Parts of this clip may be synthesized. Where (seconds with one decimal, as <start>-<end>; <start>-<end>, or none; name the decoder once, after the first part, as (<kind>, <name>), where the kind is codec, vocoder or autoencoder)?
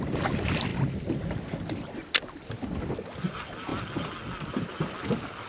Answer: 0.0-0.7 (vocoder, BigVGAN v2); 3.3-3.7; 4.3-5.5